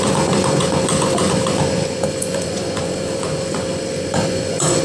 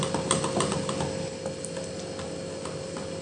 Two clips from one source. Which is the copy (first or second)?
first